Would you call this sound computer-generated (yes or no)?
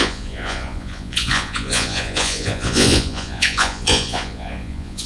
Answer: yes